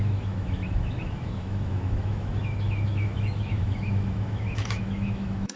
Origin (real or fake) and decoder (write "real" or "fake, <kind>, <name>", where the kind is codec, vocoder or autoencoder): fake, autoencoder, DAC-VAE